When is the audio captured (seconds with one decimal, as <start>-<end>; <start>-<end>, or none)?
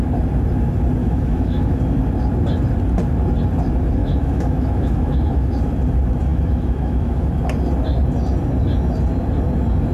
0.0-1.0; 1.8-4.0; 5.5-6.3; 7.4-9.9